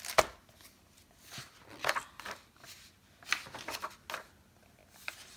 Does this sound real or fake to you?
real